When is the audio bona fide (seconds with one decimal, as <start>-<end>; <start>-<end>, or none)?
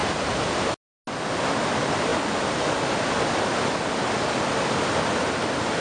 0.0-5.8